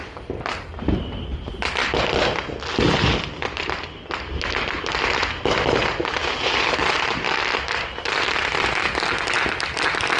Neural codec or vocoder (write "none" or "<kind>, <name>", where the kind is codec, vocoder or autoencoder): none